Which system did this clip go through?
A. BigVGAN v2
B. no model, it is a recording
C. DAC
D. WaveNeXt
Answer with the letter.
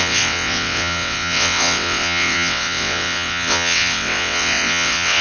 D